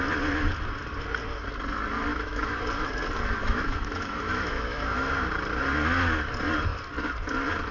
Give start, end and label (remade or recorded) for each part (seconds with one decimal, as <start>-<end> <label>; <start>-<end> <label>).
0.0-2.1 recorded; 2.1-2.6 remade; 2.6-3.4 recorded; 3.4-5.1 remade; 5.1-7.7 recorded